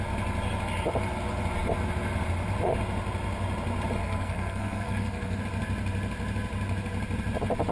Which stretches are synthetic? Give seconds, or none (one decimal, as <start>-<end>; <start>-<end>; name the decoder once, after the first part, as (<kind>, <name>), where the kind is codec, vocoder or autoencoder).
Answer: 4.0-5.4 (codec, SNAC)